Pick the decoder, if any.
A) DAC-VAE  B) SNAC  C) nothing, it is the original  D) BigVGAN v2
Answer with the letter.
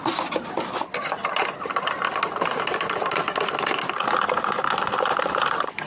C